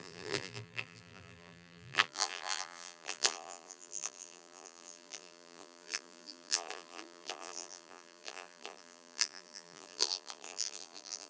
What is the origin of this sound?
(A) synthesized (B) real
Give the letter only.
A